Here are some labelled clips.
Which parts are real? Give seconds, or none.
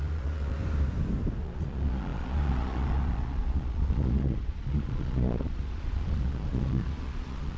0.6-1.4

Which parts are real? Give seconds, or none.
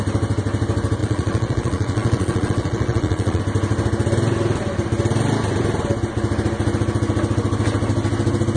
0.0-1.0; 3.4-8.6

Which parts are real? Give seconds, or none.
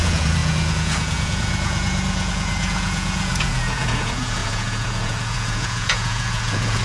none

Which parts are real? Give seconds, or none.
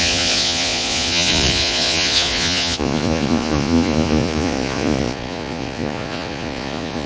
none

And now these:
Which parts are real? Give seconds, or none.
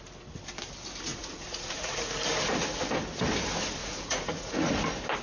0.0-1.1; 2.1-3.8; 4.7-5.2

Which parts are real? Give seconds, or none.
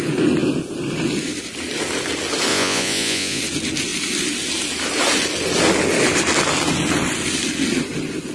0.0-2.5; 3.4-8.3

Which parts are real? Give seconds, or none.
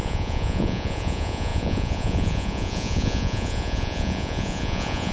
none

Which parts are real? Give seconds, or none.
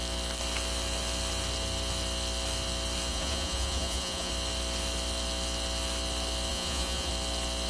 0.0-3.1; 4.3-6.5; 7.1-7.7